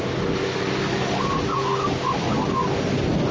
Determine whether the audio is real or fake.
real